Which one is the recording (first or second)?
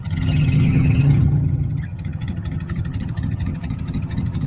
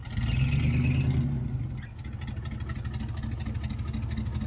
second